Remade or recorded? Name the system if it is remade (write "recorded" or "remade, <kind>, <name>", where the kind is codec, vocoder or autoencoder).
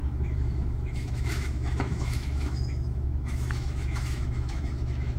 remade, autoencoder, DAC-VAE